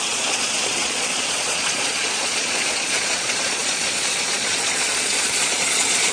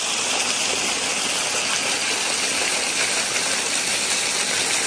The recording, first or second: second